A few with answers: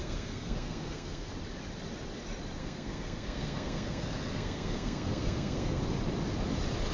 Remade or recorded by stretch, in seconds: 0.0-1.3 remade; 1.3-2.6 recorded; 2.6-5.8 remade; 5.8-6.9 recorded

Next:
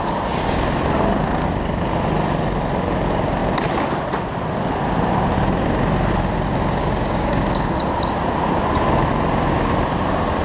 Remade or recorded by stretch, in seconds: 0.0-6.8 recorded; 6.8-7.8 remade; 7.8-10.4 recorded

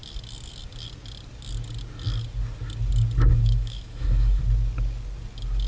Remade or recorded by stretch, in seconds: 0.0-3.3 recorded; 3.3-4.4 remade; 4.4-5.7 recorded